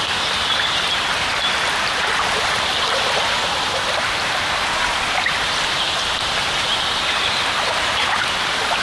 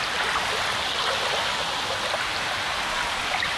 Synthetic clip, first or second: first